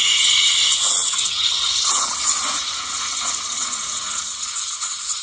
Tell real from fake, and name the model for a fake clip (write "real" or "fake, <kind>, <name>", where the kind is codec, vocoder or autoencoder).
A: fake, vocoder, Vocos